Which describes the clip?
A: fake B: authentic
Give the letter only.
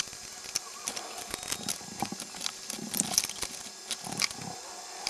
B